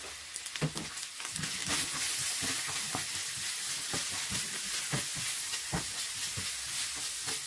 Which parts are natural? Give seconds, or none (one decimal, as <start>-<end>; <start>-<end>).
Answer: 0.0-7.5